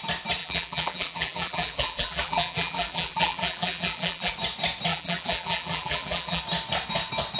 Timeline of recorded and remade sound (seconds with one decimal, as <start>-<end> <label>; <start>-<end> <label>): 0.0-0.4 recorded; 0.4-4.3 remade; 4.3-4.9 recorded; 4.9-6.4 remade; 6.4-7.4 recorded